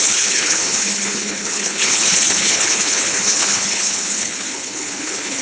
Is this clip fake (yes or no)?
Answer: yes